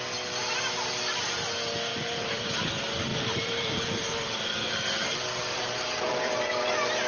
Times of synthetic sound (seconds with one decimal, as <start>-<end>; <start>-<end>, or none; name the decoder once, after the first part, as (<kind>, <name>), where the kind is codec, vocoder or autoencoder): 1.9-2.6 (vocoder, BigVGAN v2); 3.1-7.1